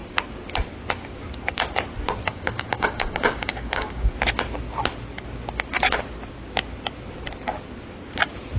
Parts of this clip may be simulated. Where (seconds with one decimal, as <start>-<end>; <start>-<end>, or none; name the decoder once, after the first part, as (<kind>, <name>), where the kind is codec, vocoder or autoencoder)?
2.3-4.1 (codec, DAC)